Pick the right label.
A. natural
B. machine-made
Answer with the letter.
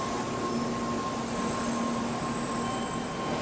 A